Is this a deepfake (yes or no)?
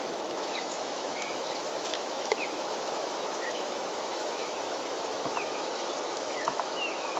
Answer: yes